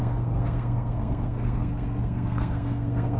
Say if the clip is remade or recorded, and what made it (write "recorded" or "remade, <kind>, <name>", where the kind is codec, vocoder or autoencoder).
remade, codec, SNAC